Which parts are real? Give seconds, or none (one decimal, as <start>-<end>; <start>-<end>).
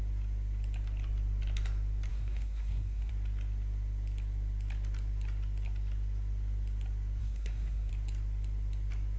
0.0-2.1; 3.1-7.2; 7.9-9.2